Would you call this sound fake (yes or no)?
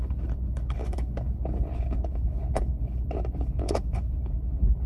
yes